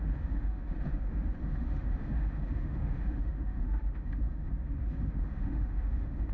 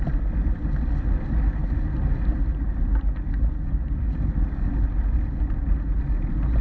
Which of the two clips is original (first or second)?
second